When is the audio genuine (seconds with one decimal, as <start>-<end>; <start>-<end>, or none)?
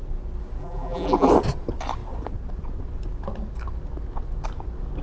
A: 0.0-0.6; 1.3-5.0